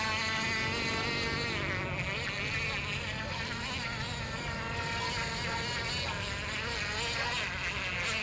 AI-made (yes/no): no